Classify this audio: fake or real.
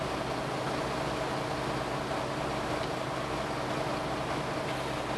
real